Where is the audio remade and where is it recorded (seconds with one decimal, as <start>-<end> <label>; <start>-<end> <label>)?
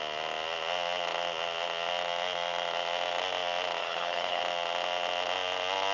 0.0-3.8 recorded; 3.8-4.4 remade; 4.4-5.9 recorded